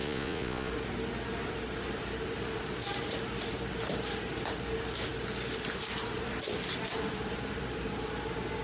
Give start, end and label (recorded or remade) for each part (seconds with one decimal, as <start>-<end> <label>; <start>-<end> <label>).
0.0-0.7 remade; 0.7-8.6 recorded